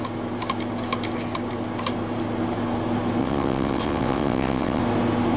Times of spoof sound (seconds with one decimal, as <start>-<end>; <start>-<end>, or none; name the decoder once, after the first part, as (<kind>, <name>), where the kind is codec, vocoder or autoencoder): 3.2-4.8 (vocoder, WaveNeXt)

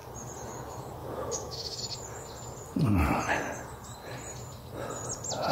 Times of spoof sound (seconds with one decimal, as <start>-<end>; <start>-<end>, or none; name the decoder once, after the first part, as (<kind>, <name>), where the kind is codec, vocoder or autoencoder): 1.0-1.8 (autoencoder, DAC-VAE)

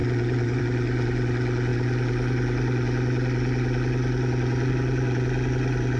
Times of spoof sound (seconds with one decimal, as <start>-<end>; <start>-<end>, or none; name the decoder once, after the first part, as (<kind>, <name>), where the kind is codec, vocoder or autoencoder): none

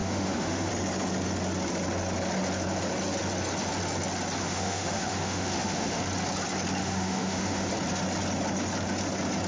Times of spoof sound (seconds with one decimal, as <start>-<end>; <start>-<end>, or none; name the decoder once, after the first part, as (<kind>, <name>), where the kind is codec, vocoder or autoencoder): 0.0-0.7 (autoencoder, DAC-VAE); 4.4-6.0; 6.8-7.7

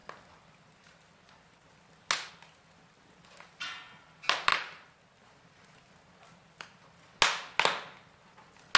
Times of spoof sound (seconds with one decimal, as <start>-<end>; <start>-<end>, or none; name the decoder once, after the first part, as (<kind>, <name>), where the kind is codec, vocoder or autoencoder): none

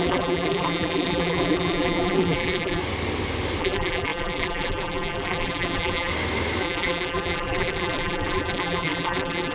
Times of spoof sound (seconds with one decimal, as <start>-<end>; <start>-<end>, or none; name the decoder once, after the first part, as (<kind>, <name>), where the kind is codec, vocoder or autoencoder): 0.0-2.8 (vocoder, BigVGAN v2); 3.6-6.1; 6.6-9.5

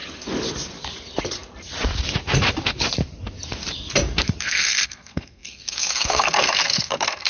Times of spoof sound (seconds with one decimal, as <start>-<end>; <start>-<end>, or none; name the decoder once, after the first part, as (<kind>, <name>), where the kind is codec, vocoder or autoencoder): 4.4-7.3 (codec, SNAC)